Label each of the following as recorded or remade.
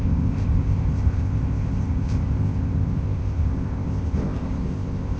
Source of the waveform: remade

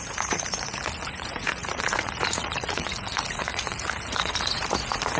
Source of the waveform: remade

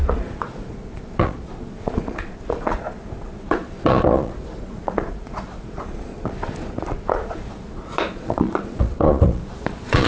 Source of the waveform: remade